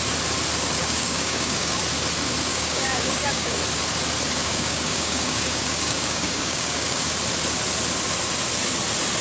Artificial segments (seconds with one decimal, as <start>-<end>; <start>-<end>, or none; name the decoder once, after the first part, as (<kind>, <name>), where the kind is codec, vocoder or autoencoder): 0.8-1.8 (codec, DAC); 2.5-3.6; 4.4-7.1